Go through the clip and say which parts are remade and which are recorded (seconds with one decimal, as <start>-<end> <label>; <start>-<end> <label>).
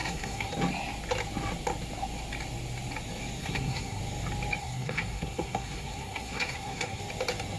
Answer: 0.0-0.5 remade; 0.5-3.4 recorded; 3.4-4.0 remade; 4.0-4.6 recorded; 4.6-7.0 remade; 7.0-7.6 recorded